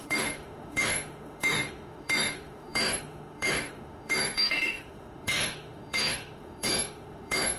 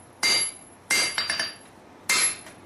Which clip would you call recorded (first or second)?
second